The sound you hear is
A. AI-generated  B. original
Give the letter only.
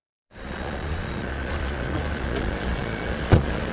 A